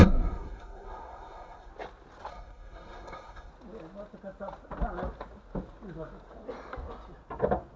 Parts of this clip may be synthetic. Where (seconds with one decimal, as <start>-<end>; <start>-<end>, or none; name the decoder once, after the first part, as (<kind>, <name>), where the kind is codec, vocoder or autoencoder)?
0.0-1.7 (codec, SNAC); 2.3-3.5